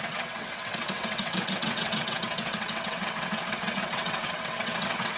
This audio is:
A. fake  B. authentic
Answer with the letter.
A